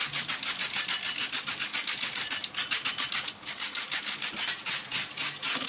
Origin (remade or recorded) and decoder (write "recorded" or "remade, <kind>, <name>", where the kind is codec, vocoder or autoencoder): recorded